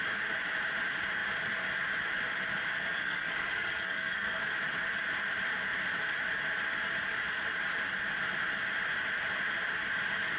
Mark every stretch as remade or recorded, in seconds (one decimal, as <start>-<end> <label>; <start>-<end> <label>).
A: 0.0-2.8 recorded; 2.8-4.4 remade; 4.4-10.4 recorded